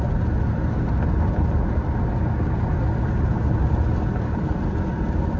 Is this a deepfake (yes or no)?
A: no